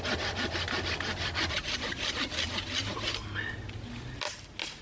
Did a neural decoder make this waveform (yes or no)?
no